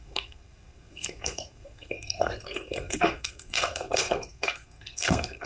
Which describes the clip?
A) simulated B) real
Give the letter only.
A